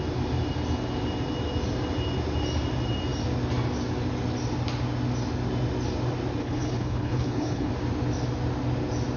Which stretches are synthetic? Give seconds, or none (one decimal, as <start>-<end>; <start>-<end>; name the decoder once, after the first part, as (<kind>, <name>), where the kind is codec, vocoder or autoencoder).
6.4-7.7 (codec, HILCodec)